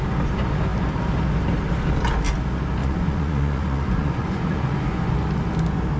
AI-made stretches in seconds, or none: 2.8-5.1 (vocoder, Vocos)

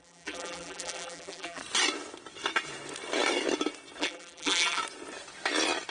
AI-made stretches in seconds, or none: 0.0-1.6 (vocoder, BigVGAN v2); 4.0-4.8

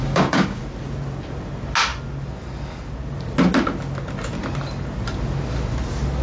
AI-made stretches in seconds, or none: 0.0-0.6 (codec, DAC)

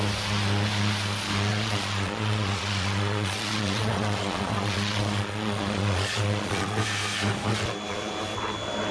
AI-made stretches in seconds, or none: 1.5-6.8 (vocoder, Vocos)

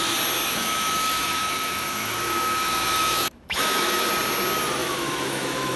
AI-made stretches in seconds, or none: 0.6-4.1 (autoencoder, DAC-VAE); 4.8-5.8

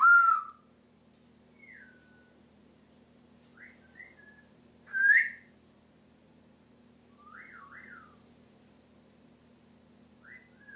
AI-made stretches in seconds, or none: none